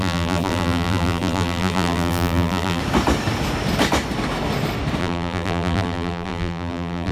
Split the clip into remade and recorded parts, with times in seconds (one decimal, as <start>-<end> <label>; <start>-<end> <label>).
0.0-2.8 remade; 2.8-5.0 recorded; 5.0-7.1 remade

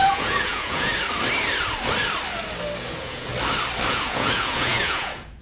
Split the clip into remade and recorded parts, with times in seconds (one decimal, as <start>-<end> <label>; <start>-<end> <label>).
0.0-0.9 remade; 0.9-2.8 recorded; 2.8-3.3 remade; 3.3-3.9 recorded; 3.9-5.4 remade

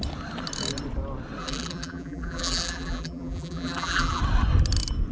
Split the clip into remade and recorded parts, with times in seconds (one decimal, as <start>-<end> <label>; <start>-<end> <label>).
0.0-1.4 recorded; 1.4-4.2 remade; 4.2-5.1 recorded

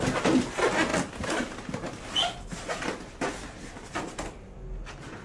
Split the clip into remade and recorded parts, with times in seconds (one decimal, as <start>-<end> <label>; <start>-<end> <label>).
0.0-5.2 recorded

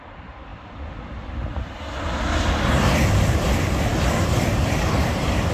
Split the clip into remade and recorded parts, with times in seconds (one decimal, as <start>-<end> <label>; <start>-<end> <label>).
0.0-5.5 recorded

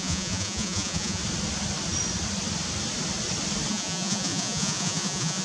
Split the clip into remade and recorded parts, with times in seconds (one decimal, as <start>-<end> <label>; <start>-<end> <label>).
0.0-1.2 remade; 1.2-3.7 recorded; 3.7-5.4 remade

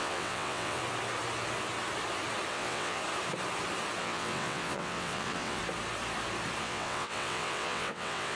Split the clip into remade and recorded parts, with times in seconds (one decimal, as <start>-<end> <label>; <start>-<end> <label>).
0.0-0.8 remade; 0.8-2.5 recorded; 2.5-3.0 remade; 3.0-4.0 recorded; 4.0-5.6 remade; 5.6-6.6 recorded; 6.6-8.4 remade